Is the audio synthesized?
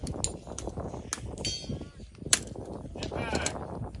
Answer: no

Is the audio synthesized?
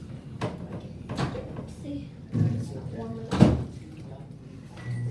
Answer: no